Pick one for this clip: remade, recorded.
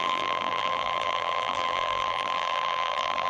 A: remade